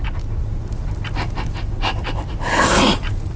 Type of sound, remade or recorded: recorded